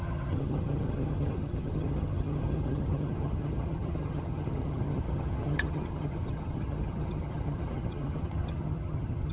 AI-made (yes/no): yes